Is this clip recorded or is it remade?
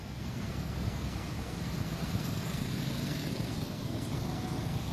remade